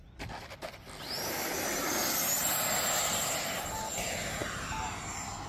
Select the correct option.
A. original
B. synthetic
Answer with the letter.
A